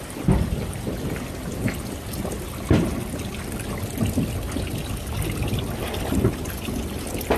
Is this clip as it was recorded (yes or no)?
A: yes